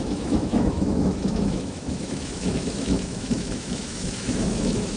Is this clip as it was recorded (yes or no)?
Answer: no